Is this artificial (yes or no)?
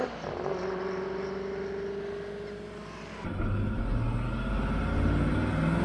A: no